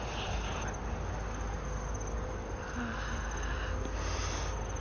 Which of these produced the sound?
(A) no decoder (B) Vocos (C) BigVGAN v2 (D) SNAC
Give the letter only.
A